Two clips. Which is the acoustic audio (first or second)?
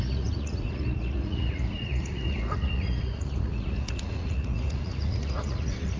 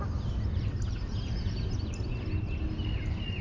second